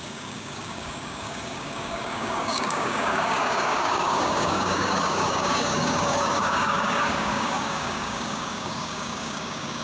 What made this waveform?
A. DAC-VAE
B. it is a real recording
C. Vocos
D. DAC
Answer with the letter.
D